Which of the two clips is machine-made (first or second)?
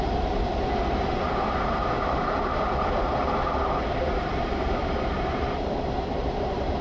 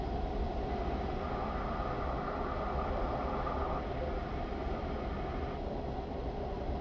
first